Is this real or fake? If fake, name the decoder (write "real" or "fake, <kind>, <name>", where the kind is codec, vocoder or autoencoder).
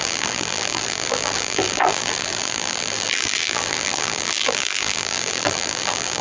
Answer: fake, vocoder, BigVGAN v2